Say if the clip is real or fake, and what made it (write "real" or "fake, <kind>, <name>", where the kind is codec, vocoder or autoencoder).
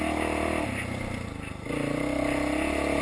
real